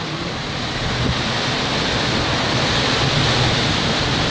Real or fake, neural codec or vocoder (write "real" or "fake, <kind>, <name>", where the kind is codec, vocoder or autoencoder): real